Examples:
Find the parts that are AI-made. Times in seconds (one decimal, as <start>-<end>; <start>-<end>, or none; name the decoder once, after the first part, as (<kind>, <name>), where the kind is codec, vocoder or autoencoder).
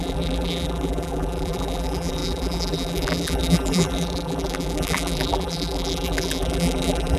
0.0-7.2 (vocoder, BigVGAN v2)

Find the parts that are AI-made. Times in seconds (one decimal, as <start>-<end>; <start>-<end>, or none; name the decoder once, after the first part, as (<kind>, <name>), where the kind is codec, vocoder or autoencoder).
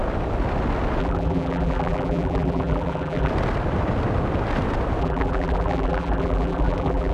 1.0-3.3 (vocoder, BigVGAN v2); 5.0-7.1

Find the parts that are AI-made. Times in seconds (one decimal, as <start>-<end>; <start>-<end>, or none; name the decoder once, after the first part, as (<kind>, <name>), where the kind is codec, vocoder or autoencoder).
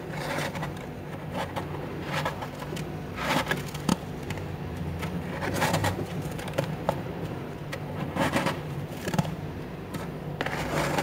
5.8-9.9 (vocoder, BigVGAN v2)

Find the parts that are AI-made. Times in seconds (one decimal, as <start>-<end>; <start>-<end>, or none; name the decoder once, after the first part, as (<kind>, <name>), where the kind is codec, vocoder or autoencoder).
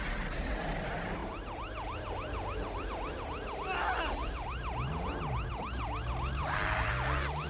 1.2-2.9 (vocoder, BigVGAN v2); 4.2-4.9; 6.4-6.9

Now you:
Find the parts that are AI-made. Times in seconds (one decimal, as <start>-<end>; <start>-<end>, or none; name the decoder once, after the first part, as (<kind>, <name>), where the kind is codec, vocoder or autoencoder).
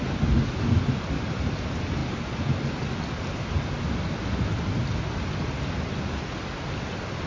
none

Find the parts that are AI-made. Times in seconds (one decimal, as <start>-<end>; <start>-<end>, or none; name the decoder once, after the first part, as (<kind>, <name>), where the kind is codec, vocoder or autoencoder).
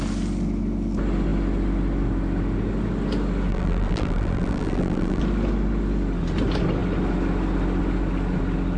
3.5-5.2 (vocoder, BigVGAN v2)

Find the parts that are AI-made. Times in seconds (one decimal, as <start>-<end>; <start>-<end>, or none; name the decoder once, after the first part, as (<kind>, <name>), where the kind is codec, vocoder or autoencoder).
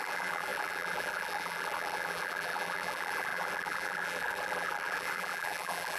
0.0-6.0 (vocoder, BigVGAN v2)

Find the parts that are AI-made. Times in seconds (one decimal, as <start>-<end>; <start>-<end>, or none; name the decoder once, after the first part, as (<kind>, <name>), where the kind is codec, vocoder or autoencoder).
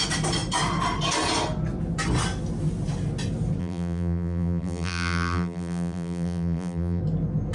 3.6-7.0 (vocoder, BigVGAN v2)